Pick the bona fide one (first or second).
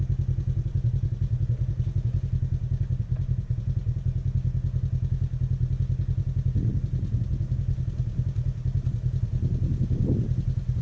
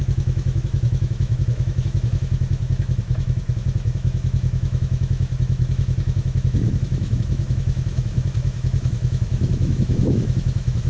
first